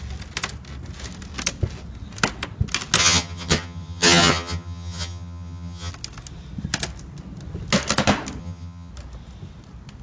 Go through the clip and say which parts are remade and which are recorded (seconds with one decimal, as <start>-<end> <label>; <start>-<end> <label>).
0.0-3.0 recorded; 3.0-5.9 remade; 5.9-8.4 recorded; 8.4-8.9 remade; 8.9-10.0 recorded